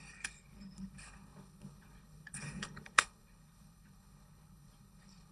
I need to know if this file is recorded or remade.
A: remade